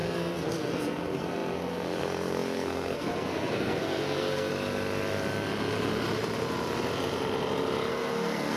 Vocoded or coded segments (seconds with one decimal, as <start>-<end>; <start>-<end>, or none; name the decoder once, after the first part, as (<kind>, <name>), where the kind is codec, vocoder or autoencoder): 0.0-4.5 (codec, SNAC); 7.9-8.6